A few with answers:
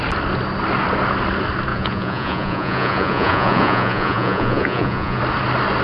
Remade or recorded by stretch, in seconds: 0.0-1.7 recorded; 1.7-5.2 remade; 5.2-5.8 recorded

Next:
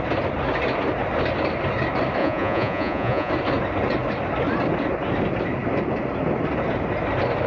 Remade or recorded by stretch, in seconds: 0.0-2.2 recorded; 2.2-3.3 remade; 3.3-7.5 recorded

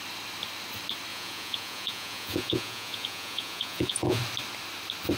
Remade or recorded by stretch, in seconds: 0.0-1.1 recorded; 1.1-4.2 remade; 4.2-5.2 recorded

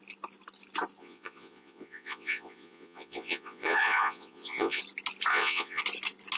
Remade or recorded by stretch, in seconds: 0.0-1.0 recorded; 1.0-4.8 remade; 4.8-5.3 recorded; 5.3-5.8 remade; 5.8-6.4 recorded

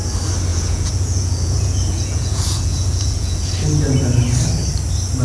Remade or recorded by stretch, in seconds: 0.0-0.5 recorded; 0.5-3.5 remade; 3.5-5.2 recorded